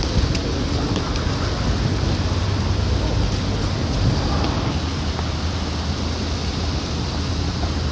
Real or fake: real